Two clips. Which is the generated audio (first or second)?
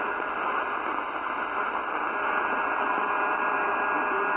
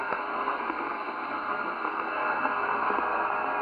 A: second